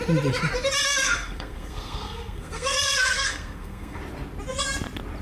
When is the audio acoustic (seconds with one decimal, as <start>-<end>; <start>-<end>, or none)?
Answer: 0.0-0.9; 4.0-5.2